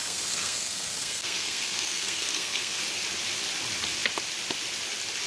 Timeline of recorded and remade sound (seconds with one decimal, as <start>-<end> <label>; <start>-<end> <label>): 0.0-2.8 remade; 2.8-5.3 recorded